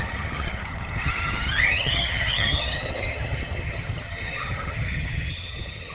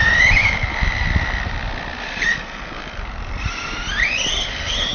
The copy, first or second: first